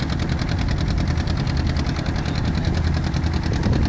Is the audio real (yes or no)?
yes